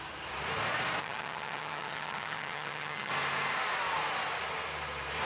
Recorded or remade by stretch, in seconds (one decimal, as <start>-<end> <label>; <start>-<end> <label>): 0.0-1.0 recorded; 1.0-3.1 remade; 3.1-5.2 recorded